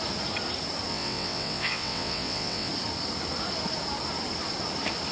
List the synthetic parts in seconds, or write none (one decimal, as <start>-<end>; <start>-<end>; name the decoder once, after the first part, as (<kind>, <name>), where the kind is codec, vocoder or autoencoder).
0.9-2.7 (vocoder, WaveNeXt)